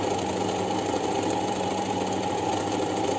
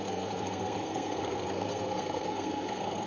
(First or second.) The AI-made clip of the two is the second